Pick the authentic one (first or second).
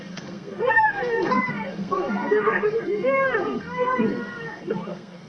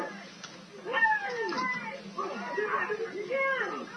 second